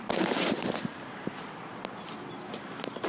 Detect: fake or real real